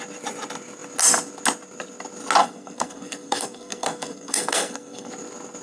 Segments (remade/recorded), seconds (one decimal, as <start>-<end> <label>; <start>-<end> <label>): 0.0-2.4 recorded; 2.4-5.1 remade; 5.1-5.6 recorded

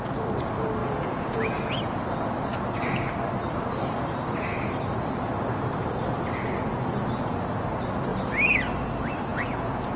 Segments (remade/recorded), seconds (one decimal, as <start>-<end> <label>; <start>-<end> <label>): 0.0-0.8 recorded; 0.8-1.4 remade; 1.4-9.3 recorded; 9.3-10.0 remade

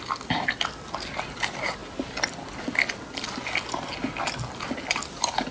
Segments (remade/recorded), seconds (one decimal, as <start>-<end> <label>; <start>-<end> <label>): 0.0-5.5 recorded

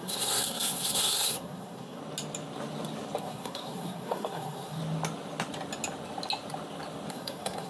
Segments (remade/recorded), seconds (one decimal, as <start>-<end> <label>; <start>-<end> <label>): 0.0-2.0 remade; 2.0-3.2 recorded; 3.2-4.8 remade; 4.8-7.1 recorded; 7.1-7.7 remade

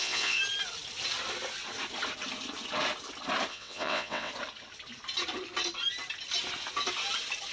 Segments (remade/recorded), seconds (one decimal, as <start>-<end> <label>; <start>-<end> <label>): 0.0-0.4 remade; 0.4-3.5 recorded; 3.5-4.3 remade; 4.3-7.5 recorded